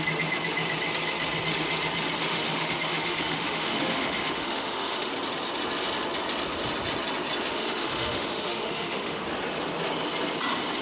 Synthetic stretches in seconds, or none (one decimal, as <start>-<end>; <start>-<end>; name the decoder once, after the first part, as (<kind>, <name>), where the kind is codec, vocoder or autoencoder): 2.2-5.1 (autoencoder, DAC-VAE); 7.5-9.2